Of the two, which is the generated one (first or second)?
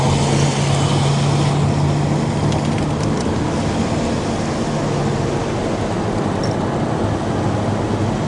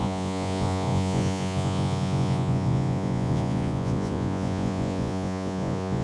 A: second